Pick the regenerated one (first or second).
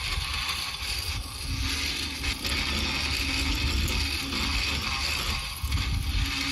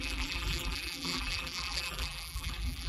second